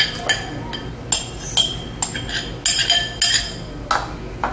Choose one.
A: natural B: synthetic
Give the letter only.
A